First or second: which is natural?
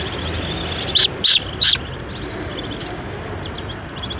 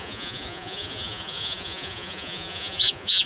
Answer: first